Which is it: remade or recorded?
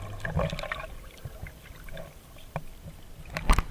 recorded